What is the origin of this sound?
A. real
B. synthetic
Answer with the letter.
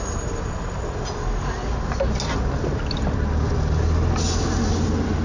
A